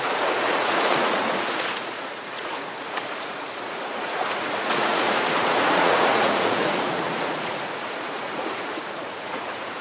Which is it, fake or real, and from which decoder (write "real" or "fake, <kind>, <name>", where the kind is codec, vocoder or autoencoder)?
fake, vocoder, Vocos